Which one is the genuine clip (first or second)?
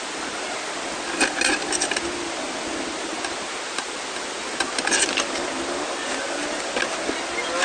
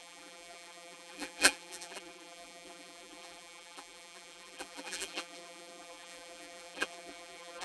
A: first